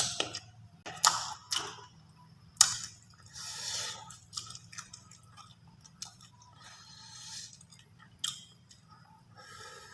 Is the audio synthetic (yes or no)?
no